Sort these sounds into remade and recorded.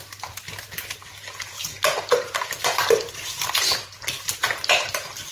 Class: recorded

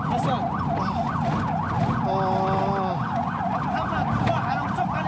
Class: recorded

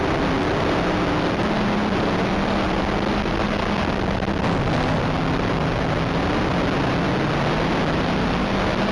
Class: recorded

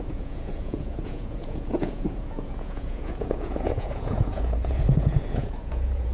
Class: remade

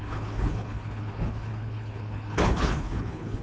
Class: remade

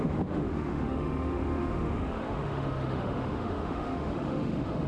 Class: remade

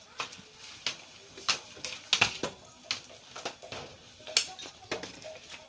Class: recorded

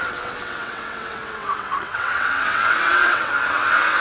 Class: remade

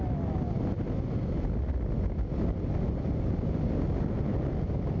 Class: recorded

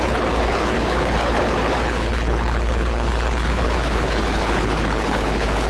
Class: remade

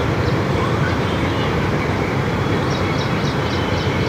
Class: remade